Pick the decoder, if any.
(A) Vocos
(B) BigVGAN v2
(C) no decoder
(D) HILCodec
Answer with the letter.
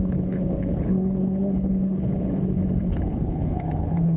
D